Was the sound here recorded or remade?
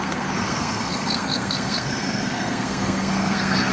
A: remade